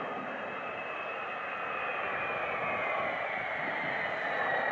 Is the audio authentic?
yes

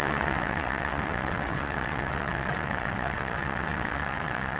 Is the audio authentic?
no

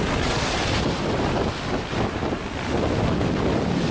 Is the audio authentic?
yes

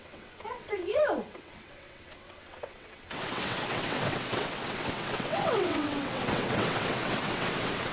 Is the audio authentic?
no